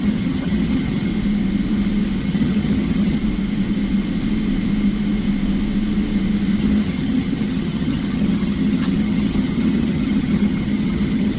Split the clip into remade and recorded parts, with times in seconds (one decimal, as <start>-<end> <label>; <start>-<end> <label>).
0.0-1.1 remade; 1.1-2.2 recorded; 2.2-3.2 remade; 3.2-6.6 recorded; 6.6-11.4 remade